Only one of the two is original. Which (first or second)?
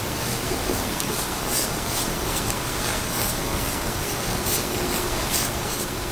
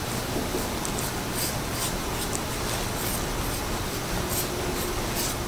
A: second